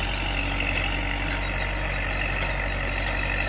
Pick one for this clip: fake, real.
real